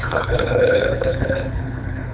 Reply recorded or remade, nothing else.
remade